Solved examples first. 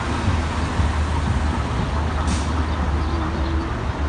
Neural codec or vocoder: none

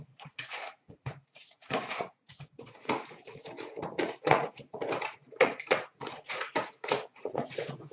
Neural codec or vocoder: vocoder, Vocos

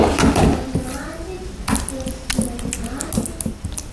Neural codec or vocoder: none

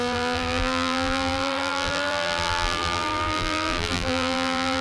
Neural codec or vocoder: vocoder, BigVGAN v2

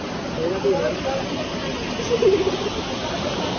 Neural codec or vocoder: none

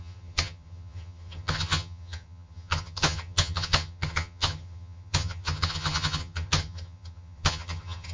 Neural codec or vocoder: vocoder, HiFi-GAN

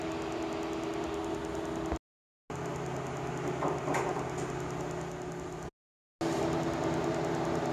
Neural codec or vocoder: none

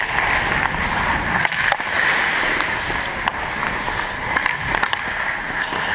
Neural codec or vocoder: none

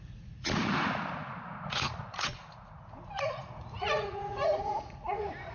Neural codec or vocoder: vocoder, Vocos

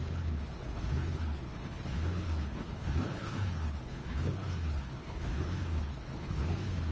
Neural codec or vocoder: codec, HILCodec